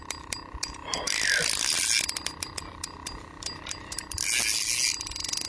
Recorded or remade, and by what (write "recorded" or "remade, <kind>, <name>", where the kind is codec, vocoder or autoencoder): recorded